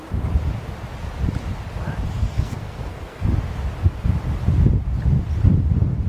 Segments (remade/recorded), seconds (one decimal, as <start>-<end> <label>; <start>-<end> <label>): 0.0-2.2 recorded; 2.2-3.3 remade; 3.3-6.1 recorded